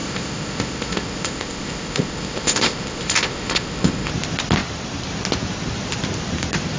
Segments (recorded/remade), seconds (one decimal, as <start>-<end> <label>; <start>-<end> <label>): 0.0-4.1 remade; 4.1-6.8 recorded